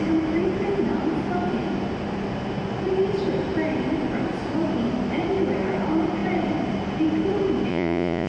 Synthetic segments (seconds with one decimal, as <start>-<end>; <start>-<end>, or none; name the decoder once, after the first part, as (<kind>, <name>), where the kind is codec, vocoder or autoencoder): 7.7-8.3 (vocoder, Vocos)

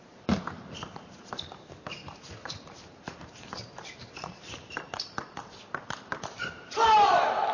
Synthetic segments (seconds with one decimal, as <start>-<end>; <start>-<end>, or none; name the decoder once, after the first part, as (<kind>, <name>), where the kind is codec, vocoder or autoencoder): 0.0-7.5 (vocoder, BigVGAN v2)